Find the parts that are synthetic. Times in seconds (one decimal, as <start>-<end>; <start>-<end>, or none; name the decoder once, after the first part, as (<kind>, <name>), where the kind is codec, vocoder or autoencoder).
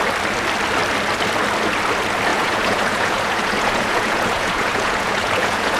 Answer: 2.3-5.8 (vocoder, Vocos)